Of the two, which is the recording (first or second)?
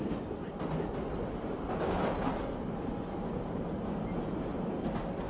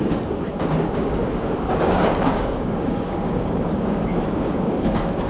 first